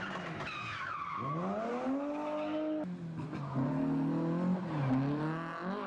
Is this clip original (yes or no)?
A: yes